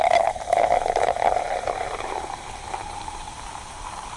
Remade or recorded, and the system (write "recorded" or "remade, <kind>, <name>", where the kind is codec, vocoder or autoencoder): remade, vocoder, BigVGAN v2